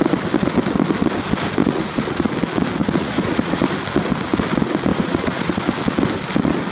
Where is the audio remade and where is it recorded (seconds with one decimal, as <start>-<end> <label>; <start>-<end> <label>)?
0.0-1.6 recorded; 1.6-2.3 remade; 2.3-2.8 recorded; 2.8-3.6 remade; 3.6-4.9 recorded; 4.9-5.6 remade; 5.6-6.7 recorded

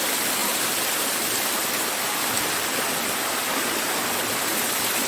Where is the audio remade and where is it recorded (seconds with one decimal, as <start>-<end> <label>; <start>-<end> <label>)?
0.0-5.1 recorded

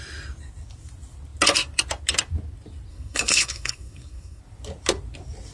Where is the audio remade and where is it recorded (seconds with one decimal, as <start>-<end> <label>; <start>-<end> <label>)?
0.0-2.9 recorded; 2.9-4.4 remade; 4.4-5.5 recorded

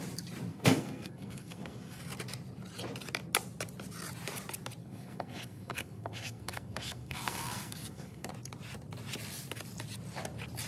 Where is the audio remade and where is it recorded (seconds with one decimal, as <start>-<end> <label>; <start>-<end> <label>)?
0.0-0.5 recorded; 0.5-2.0 remade; 2.0-4.8 recorded; 4.8-8.3 remade; 8.3-10.7 recorded

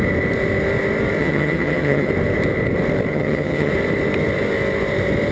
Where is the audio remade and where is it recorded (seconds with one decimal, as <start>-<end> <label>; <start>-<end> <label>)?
0.0-1.2 recorded; 1.2-2.1 remade; 2.1-3.1 recorded; 3.1-3.7 remade; 3.7-5.3 recorded

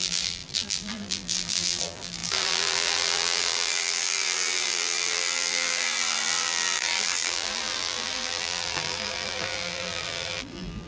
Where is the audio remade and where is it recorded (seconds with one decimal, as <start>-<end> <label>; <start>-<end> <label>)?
0.0-10.9 remade

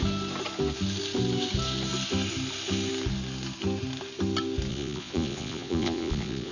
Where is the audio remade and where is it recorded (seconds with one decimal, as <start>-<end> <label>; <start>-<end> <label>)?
0.0-4.7 recorded; 4.7-6.5 remade

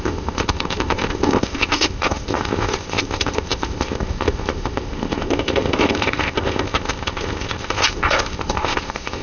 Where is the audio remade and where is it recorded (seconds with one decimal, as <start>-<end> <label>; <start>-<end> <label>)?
0.0-9.2 remade